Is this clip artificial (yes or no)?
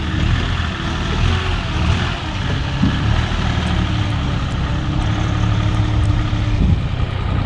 no